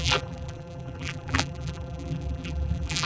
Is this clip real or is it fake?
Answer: fake